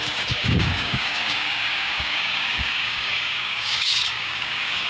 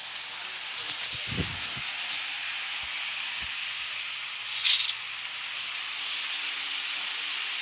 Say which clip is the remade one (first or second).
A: first